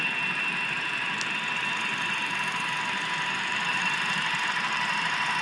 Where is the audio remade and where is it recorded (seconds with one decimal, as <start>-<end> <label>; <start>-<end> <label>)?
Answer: 0.0-1.9 recorded; 1.9-5.4 remade